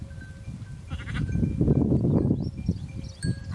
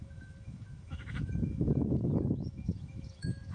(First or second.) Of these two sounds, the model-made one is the second